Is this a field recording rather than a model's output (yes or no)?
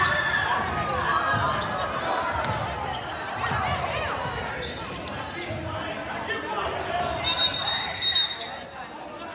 yes